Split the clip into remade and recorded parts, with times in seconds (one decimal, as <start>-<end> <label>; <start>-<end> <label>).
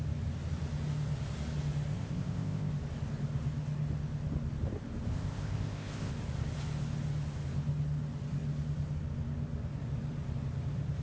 0.0-1.9 recorded; 1.9-2.7 remade; 2.7-5.1 recorded; 5.1-6.1 remade; 6.1-11.0 recorded